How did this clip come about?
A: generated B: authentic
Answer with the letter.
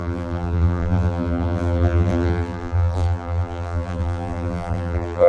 A